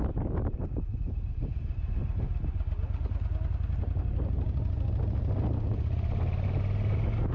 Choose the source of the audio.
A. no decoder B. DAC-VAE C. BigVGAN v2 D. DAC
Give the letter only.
A